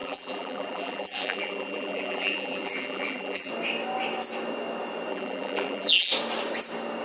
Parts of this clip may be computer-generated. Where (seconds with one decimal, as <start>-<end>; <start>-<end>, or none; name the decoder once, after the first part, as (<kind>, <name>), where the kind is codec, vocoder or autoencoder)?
0.0-3.5 (vocoder, BigVGAN v2); 5.1-6.1